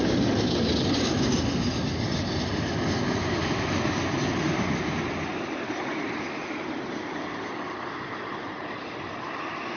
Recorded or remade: recorded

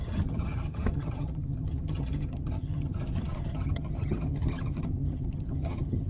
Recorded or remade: remade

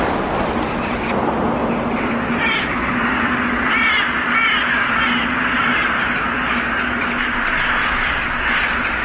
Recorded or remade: recorded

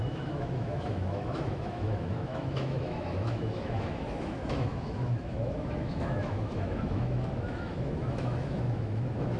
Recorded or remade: remade